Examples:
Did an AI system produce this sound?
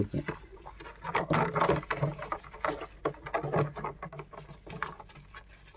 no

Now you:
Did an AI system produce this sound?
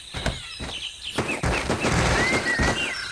no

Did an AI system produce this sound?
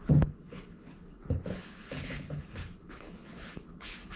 yes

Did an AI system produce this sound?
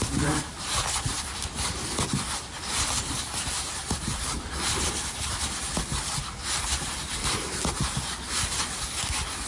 no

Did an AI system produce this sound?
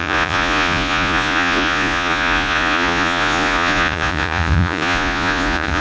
yes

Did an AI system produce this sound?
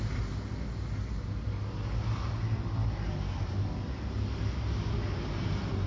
no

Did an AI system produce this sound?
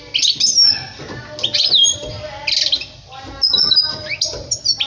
no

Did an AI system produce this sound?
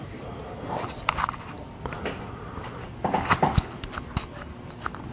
no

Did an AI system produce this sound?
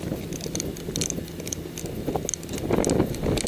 no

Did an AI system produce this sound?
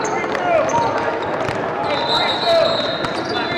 no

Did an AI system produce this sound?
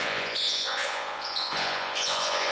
yes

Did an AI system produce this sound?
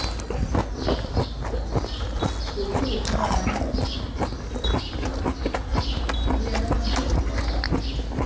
no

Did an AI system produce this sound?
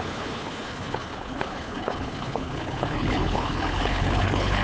yes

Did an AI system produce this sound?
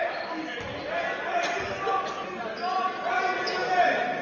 no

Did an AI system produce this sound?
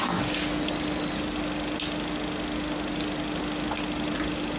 no